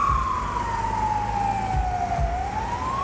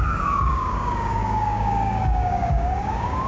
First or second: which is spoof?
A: second